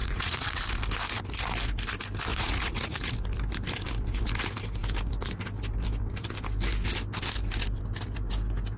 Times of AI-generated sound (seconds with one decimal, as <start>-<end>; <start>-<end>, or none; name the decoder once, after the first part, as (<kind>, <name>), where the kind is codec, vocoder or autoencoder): 0.0-0.6 (vocoder, Vocos); 2.3-3.1